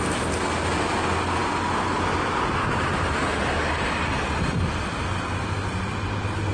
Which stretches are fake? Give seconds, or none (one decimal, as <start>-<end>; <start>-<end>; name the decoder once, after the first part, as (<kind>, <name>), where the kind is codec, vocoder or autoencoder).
none